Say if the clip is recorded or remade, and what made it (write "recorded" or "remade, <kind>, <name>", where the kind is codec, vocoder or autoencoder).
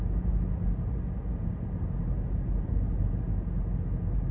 recorded